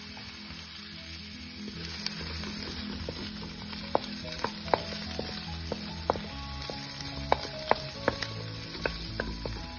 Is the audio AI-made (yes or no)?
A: no